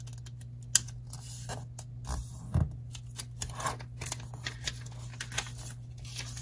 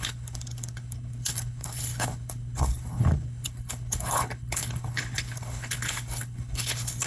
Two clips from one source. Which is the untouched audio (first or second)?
first